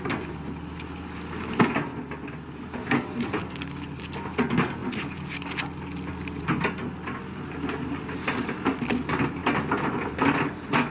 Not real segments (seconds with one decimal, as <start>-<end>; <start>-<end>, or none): none